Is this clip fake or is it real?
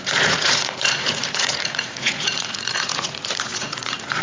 fake